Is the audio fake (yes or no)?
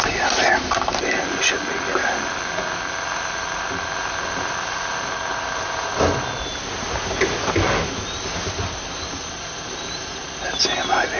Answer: no